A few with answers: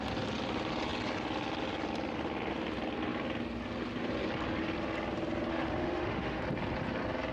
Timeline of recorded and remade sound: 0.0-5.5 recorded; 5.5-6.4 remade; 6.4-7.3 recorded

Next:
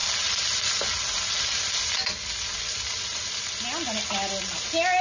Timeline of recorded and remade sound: 0.0-5.0 recorded

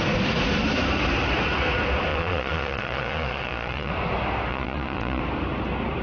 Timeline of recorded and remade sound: 0.0-2.1 recorded; 2.1-3.9 remade; 3.9-4.5 recorded; 4.5-5.2 remade; 5.2-6.0 recorded